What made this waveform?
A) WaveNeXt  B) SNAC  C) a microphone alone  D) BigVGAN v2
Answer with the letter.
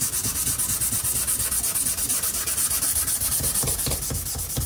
C